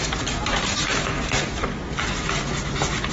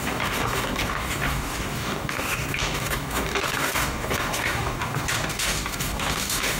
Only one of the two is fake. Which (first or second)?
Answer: second